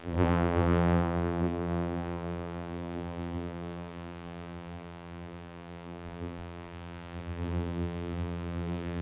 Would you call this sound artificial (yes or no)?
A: yes